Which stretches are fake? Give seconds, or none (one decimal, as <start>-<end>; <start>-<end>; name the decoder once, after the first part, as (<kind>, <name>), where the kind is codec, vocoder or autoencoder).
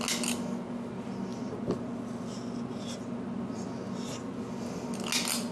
none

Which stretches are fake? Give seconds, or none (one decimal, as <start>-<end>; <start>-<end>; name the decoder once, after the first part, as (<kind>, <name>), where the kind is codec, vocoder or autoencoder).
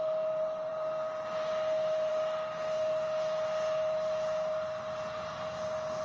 none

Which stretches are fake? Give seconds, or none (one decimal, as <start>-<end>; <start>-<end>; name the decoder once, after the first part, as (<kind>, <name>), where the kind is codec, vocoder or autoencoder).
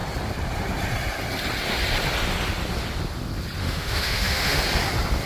3.6-4.6 (autoencoder, DAC-VAE)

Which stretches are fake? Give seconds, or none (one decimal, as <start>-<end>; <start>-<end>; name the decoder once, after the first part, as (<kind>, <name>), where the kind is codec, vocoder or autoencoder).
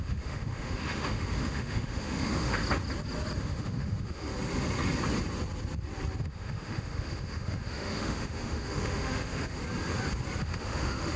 0.0-2.6 (autoencoder, DAC-VAE); 3.4-4.3; 6.2-9.6; 10.4-11.2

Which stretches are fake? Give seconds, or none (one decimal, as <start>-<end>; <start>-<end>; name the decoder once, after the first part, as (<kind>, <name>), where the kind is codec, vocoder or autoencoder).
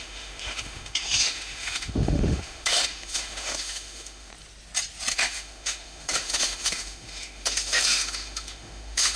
0.0-4.3 (autoencoder, DAC-VAE); 5.1-9.2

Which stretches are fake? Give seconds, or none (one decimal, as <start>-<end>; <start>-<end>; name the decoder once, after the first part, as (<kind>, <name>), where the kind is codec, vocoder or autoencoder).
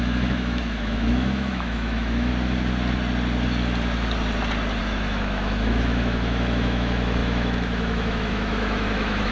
0.0-2.3 (autoencoder, DAC-VAE); 4.8-9.3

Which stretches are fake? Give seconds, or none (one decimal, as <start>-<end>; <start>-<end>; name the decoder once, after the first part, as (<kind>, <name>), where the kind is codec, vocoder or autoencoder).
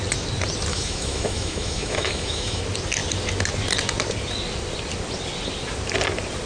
0.7-2.6 (autoencoder, DAC-VAE)